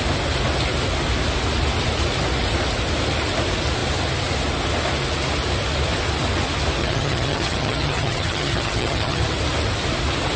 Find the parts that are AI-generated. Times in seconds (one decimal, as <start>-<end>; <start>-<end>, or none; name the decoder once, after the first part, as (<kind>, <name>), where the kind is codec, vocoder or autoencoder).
6.8-9.2 (vocoder, HiFi-GAN)